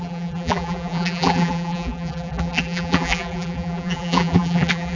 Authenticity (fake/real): fake